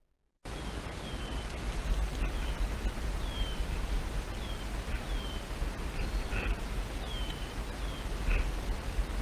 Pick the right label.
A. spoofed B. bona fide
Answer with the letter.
B